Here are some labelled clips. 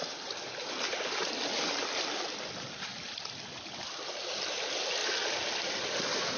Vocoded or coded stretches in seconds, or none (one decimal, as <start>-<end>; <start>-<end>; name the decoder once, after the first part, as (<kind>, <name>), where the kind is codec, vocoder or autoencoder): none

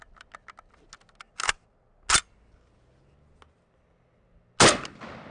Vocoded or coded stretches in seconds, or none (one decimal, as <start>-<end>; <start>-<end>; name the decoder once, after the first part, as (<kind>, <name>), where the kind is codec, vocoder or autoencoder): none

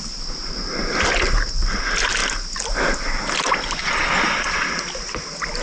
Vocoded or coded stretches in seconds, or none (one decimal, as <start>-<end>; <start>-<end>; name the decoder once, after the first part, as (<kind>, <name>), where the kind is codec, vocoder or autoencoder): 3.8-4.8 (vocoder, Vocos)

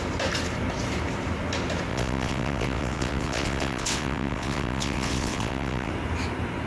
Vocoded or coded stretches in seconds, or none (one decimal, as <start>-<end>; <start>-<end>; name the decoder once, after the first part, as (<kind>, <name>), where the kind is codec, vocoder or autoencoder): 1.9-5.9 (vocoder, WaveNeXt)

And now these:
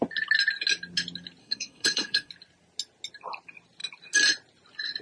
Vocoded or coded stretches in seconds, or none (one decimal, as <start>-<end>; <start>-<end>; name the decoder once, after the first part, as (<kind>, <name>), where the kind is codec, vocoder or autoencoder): 1.4-2.3 (codec, SNAC)

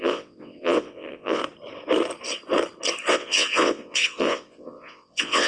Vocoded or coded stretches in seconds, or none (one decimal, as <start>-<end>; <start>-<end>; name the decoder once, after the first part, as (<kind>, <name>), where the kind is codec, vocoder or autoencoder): 0.0-1.4 (vocoder, WaveNeXt); 3.1-5.5

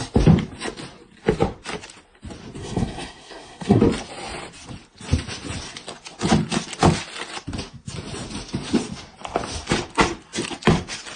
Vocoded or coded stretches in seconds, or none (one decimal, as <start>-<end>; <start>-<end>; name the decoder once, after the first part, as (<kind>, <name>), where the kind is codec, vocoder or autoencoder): 2.6-3.8 (codec, SNAC)

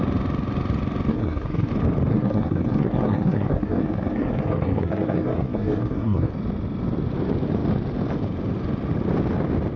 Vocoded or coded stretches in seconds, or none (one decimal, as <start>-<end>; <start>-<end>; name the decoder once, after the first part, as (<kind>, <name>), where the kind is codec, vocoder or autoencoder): 1.1-1.7 (codec, SNAC); 2.1-6.3